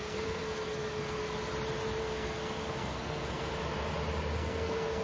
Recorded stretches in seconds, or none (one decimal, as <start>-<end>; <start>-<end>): 1.2-2.0; 3.5-4.3